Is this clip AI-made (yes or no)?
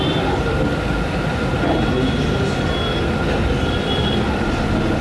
no